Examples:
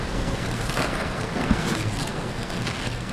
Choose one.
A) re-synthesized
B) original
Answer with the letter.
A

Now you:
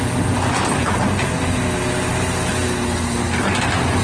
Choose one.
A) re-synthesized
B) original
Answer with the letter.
B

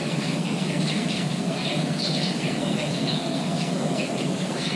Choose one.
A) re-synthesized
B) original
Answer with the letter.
A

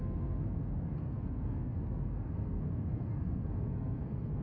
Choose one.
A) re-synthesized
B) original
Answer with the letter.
A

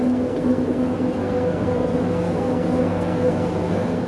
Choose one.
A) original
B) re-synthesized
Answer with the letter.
B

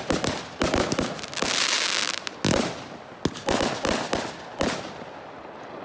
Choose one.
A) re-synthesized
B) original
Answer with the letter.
B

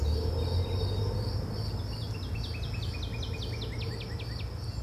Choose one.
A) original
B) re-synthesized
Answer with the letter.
A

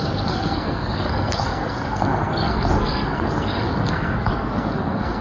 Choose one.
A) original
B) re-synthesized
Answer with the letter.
B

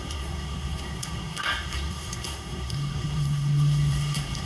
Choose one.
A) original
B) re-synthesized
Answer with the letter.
B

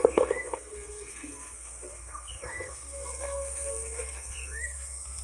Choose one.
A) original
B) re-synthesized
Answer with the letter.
B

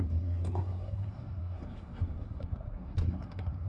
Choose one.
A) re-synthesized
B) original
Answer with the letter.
A